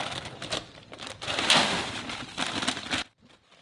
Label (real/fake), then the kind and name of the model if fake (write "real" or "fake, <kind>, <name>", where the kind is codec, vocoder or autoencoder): real